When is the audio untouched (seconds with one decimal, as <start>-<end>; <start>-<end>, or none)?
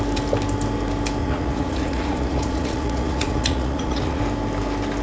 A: 0.0-1.2; 4.2-5.0